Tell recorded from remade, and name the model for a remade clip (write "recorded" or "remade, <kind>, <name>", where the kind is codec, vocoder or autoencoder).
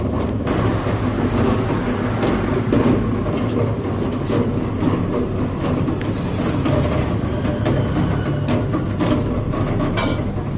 recorded